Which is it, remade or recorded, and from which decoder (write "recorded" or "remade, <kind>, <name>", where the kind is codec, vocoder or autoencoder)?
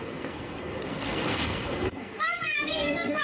remade, codec, SNAC